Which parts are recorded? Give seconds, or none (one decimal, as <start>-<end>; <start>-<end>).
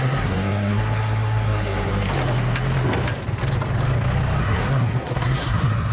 1.9-4.4